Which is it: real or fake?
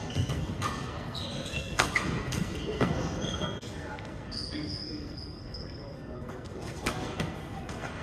fake